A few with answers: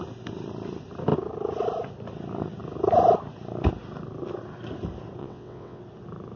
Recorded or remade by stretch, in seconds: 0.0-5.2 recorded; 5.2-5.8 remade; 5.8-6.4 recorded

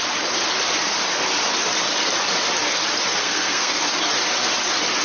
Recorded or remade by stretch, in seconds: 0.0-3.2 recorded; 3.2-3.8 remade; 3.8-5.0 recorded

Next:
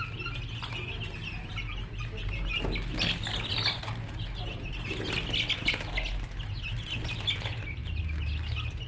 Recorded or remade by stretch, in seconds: 0.0-8.9 recorded